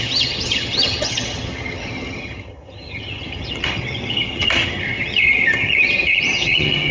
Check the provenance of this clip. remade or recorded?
remade